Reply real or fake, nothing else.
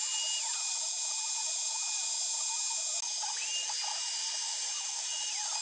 real